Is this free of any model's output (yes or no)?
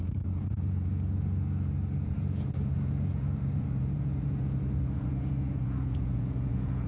no